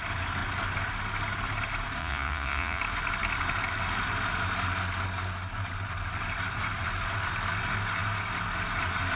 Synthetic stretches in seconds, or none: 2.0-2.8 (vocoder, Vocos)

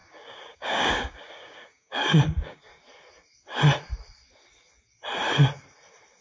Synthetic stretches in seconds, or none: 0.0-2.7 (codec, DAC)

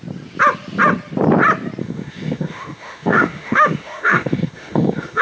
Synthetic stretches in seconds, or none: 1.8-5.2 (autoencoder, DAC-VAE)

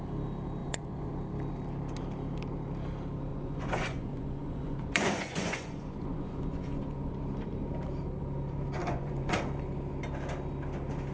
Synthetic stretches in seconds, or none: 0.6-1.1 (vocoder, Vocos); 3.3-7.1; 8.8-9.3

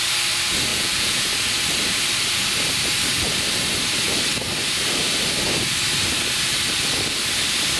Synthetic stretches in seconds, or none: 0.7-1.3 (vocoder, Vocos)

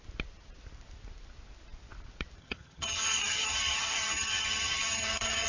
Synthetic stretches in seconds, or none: 2.4-5.5 (vocoder, HiFi-GAN)

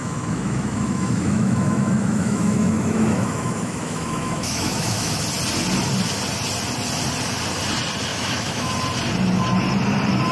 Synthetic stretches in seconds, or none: 0.0-5.2 (autoencoder, DAC-VAE); 8.1-8.7

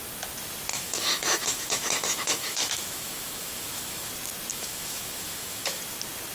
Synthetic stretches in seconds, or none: 0.7-4.1 (autoencoder, DAC-VAE); 4.5-5.8